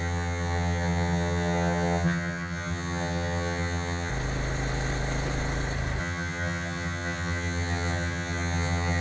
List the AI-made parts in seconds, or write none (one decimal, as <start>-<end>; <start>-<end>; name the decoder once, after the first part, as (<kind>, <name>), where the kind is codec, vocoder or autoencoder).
0.0-4.1 (vocoder, HiFi-GAN); 6.0-9.0